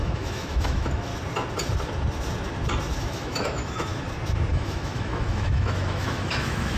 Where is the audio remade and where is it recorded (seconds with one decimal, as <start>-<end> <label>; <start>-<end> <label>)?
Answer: 0.0-1.1 remade; 1.1-3.0 recorded; 3.0-3.9 remade; 3.9-4.5 recorded; 4.5-6.8 remade